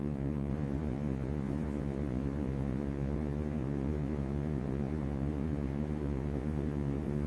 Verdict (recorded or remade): remade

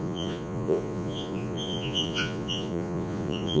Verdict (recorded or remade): remade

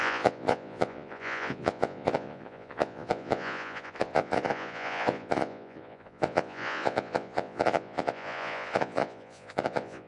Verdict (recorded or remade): remade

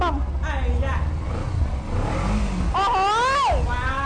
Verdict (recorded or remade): recorded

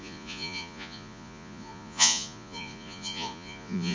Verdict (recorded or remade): remade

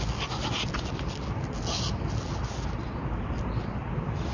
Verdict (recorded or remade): recorded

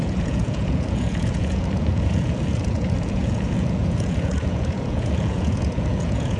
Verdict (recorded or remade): remade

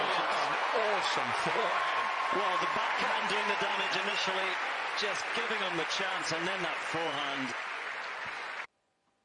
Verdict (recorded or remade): remade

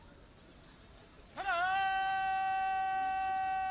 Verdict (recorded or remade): recorded